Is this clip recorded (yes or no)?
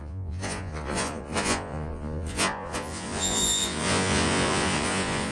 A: no